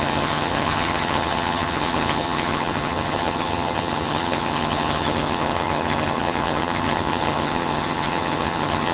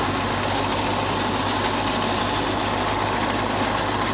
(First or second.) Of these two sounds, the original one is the second